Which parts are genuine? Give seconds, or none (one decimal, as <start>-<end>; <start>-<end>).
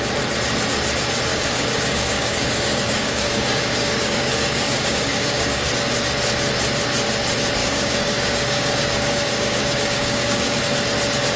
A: 0.0-1.3; 5.7-7.6; 10.6-11.4